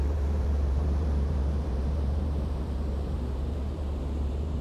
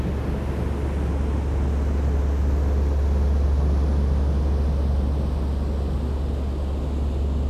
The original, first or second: second